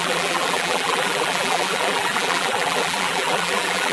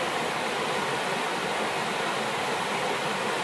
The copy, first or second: first